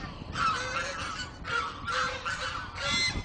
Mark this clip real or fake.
real